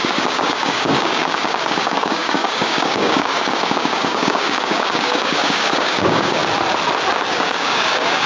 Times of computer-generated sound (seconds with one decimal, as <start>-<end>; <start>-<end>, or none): 0.0-6.4; 7.3-8.3